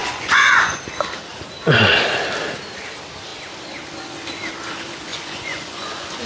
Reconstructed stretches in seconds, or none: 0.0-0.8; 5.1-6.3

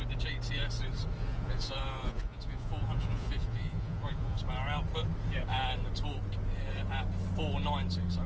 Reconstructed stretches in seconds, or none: 1.2-4.4

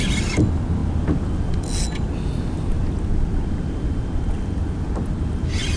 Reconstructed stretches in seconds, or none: none

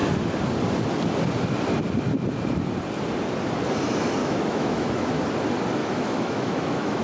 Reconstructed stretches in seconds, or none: 4.2-5.2; 5.8-7.0

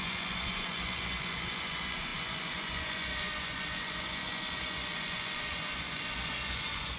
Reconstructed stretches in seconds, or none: 0.0-7.0

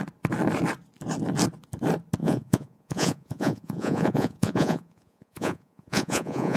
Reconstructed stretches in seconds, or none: 2.2-6.6

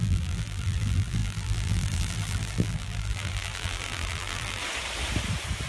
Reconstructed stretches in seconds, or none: 0.0-4.6